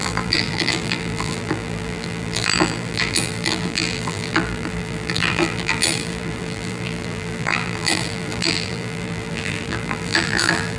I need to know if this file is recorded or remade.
remade